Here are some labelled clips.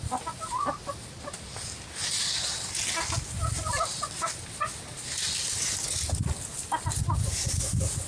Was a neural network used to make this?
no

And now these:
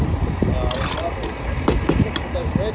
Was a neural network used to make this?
no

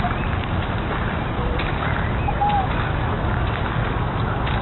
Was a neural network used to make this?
no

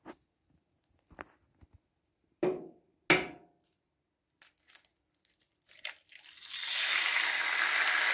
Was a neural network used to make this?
no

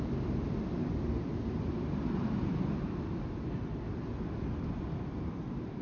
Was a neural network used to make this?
yes